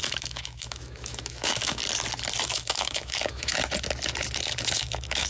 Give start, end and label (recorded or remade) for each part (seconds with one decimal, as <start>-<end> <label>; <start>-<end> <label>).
0.0-1.8 remade; 1.8-2.4 recorded; 2.4-3.6 remade; 3.6-4.6 recorded; 4.6-5.3 remade